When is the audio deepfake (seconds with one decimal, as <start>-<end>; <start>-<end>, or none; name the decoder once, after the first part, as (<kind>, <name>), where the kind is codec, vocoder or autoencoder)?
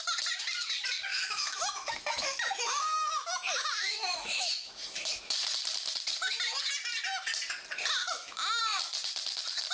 1.1-5.2 (autoencoder, DAC-VAE); 8.0-8.6